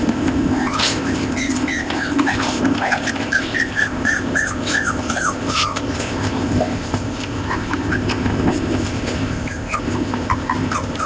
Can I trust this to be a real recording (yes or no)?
no